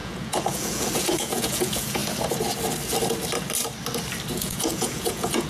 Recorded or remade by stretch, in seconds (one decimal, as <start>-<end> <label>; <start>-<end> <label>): 0.0-2.0 remade; 2.0-4.3 recorded; 4.3-5.5 remade